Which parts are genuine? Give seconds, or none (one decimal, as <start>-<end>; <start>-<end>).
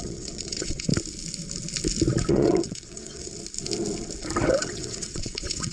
0.9-2.3; 3.3-4.5